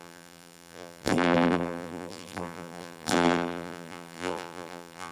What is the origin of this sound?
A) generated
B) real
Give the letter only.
A